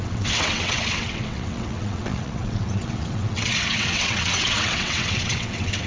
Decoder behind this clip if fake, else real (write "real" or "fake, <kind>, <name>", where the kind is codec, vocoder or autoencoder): fake, vocoder, WaveNeXt